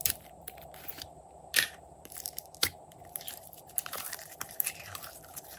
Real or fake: fake